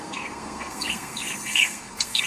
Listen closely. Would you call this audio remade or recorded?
remade